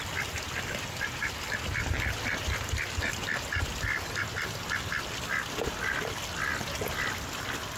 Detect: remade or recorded recorded